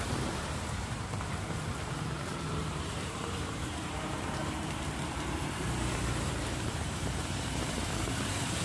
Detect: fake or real fake